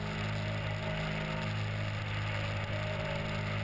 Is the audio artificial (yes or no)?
no